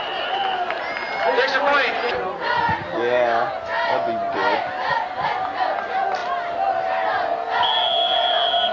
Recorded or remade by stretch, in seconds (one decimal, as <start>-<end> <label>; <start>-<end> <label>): 0.0-8.7 recorded